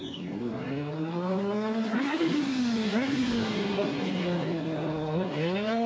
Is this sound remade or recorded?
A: remade